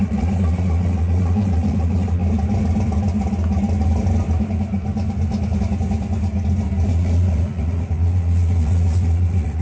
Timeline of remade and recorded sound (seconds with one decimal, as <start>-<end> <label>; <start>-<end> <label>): 0.0-2.2 remade; 2.2-6.9 recorded; 6.9-9.6 remade